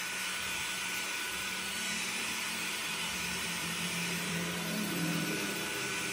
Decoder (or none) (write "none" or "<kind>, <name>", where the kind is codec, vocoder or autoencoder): vocoder, BigVGAN v2